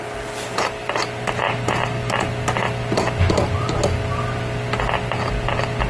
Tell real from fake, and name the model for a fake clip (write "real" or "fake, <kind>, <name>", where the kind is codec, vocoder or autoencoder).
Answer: real